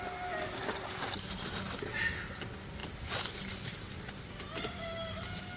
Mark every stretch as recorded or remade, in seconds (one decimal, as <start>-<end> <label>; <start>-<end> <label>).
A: 0.0-5.6 recorded